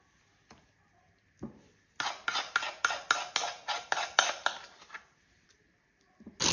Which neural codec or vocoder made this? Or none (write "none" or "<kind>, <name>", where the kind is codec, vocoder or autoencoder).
none